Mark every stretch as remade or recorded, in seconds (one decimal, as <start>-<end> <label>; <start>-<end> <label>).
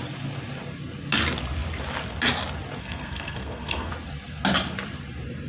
0.0-2.8 recorded; 2.8-3.9 remade; 3.9-5.5 recorded